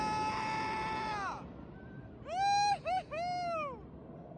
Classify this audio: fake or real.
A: real